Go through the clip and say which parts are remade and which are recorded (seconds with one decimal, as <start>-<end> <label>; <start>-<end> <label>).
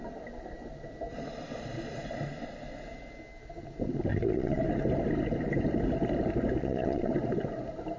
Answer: 0.0-4.1 recorded; 4.1-4.6 remade; 4.6-6.6 recorded; 6.6-7.1 remade; 7.1-8.0 recorded